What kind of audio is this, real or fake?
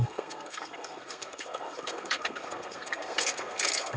fake